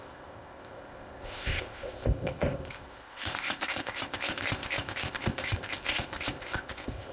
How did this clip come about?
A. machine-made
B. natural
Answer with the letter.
A